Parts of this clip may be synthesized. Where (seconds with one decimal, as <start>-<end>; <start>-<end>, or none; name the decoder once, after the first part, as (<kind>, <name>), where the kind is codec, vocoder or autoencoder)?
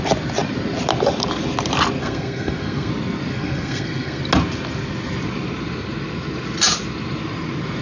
2.0-2.9 (codec, SNAC); 3.3-4.2